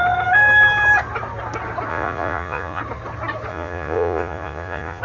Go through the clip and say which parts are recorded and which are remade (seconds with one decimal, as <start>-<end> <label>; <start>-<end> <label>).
0.0-1.9 recorded; 1.9-2.8 remade; 2.8-3.5 recorded; 3.5-5.0 remade